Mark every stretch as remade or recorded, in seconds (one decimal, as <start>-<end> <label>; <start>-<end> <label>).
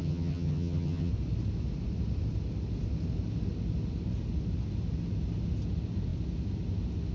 0.0-1.1 remade; 1.1-7.1 recorded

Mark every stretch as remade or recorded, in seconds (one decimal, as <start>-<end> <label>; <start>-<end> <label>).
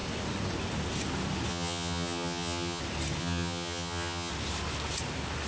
0.0-1.5 recorded; 1.5-2.8 remade; 2.8-3.2 recorded; 3.2-4.3 remade; 4.3-5.5 recorded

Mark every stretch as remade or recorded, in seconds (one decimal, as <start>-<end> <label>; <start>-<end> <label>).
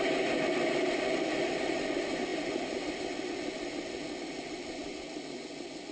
0.0-5.9 recorded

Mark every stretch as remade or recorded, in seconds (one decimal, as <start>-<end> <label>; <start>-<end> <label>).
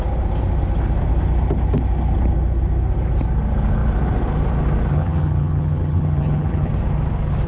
0.0-4.9 recorded; 4.9-6.7 remade; 6.7-7.5 recorded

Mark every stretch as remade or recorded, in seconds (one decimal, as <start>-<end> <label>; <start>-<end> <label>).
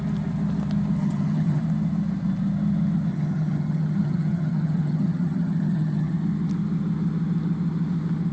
0.0-1.0 recorded; 1.0-1.6 remade; 1.6-3.1 recorded; 3.1-6.1 remade; 6.1-8.3 recorded